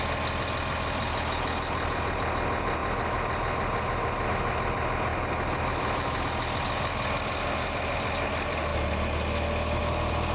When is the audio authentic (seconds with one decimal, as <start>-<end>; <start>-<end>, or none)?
0.0-5.1; 6.2-10.3